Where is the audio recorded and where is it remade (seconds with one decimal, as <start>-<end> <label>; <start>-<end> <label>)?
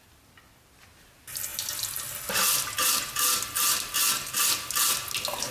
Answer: 0.0-5.5 recorded